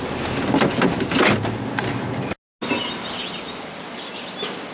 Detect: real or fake real